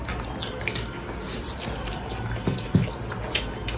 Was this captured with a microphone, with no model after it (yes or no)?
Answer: yes